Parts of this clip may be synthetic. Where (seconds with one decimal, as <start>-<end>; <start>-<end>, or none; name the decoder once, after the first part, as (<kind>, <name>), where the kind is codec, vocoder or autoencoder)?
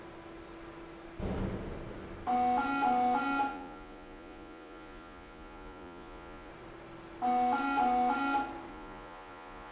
3.5-6.5 (vocoder, Vocos); 8.7-9.7